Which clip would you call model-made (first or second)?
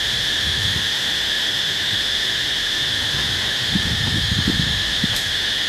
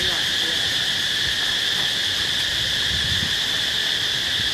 first